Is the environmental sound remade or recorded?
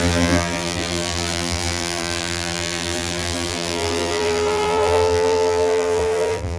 remade